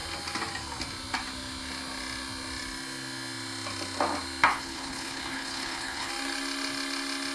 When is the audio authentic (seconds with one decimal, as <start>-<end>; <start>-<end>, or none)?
0.0-4.5; 6.1-7.3